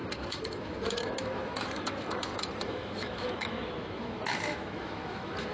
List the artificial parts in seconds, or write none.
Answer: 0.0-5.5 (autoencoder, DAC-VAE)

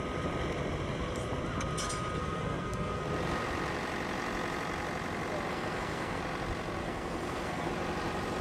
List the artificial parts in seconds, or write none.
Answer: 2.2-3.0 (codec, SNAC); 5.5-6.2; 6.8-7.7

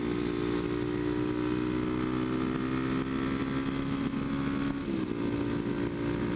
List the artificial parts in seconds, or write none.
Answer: none